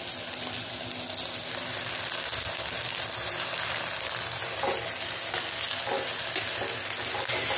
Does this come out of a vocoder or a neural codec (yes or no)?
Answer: no